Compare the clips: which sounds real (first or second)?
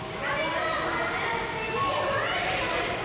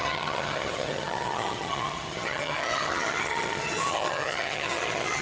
first